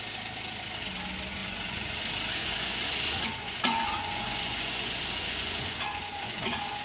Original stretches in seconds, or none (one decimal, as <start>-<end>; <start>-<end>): 0.0-1.4; 2.0-2.4